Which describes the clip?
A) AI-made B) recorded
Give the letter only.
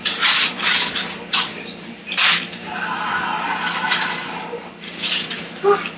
A